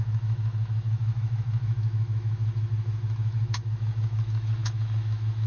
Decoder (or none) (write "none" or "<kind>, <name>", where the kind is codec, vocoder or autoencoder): autoencoder, DAC-VAE